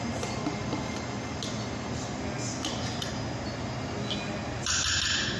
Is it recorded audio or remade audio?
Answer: recorded